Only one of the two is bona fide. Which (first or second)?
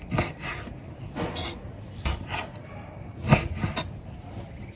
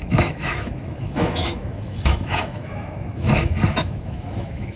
first